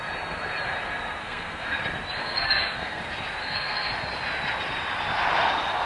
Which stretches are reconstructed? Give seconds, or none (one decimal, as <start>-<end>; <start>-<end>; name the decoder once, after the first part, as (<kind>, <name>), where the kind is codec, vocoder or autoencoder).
1.2-1.8 (codec, SNAC); 2.2-3.0; 3.4-3.9